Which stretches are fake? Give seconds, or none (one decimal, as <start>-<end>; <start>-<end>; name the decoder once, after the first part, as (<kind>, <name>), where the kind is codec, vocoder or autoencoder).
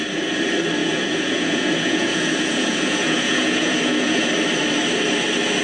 0.8-4.2 (vocoder, Vocos)